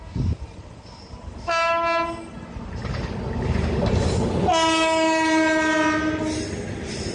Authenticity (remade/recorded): recorded